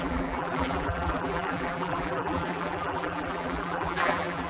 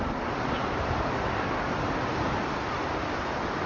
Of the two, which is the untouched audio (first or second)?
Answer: second